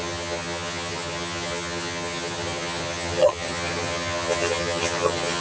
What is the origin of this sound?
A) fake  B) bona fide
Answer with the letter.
A